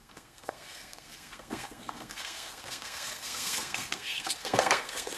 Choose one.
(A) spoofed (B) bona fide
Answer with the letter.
A